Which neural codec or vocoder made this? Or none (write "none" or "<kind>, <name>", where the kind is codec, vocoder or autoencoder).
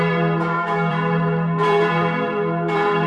vocoder, BigVGAN v2